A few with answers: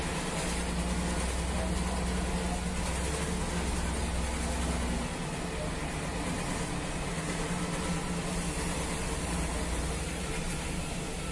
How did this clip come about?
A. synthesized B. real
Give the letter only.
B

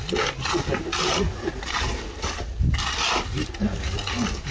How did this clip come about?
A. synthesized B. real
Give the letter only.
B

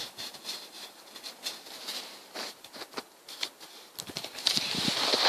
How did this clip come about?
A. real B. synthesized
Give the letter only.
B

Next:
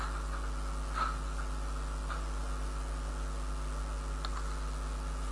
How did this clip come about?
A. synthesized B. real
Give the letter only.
B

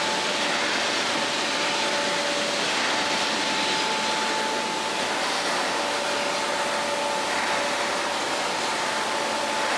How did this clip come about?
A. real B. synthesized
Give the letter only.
A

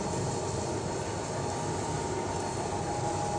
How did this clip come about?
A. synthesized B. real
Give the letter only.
B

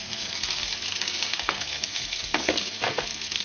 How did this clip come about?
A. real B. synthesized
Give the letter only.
B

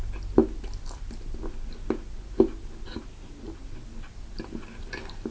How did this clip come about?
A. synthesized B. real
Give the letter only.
B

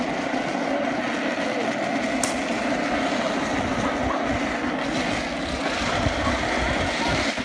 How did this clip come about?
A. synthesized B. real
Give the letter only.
B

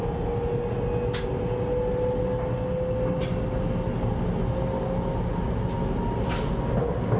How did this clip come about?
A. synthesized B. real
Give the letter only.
B